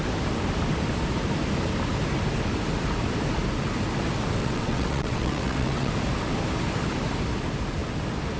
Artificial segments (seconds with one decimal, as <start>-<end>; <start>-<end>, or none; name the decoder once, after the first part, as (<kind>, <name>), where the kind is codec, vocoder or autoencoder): 4.4-5.9 (vocoder, WaveNeXt)